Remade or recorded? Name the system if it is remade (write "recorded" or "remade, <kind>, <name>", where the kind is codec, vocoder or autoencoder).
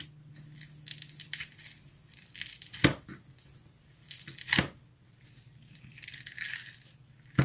recorded